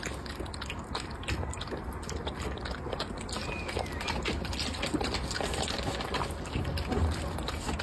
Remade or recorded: recorded